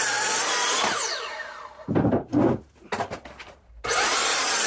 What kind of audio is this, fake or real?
real